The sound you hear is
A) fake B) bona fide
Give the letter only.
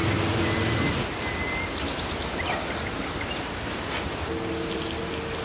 B